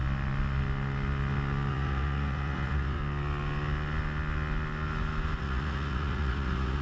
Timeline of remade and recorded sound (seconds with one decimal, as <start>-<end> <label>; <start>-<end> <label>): 0.0-1.7 recorded; 1.7-3.0 remade; 3.0-5.4 recorded; 5.4-6.8 remade